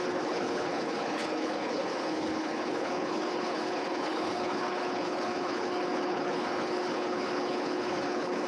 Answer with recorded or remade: remade